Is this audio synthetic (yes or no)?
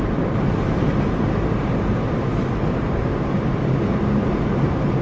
yes